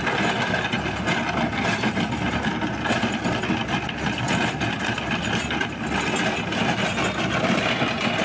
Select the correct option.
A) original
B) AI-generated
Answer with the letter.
A